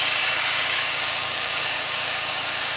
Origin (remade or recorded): remade